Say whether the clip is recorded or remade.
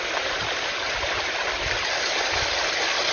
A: recorded